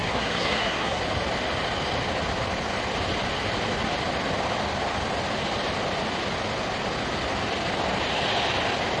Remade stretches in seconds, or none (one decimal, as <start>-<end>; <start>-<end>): 0.0-1.0